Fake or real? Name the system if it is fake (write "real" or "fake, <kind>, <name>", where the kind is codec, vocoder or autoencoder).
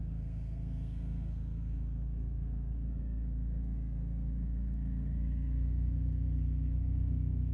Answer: fake, codec, SNAC